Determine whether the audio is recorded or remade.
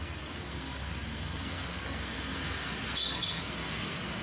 remade